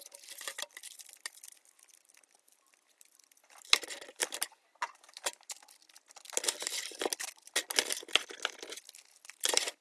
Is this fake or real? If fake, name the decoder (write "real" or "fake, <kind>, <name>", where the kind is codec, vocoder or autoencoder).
real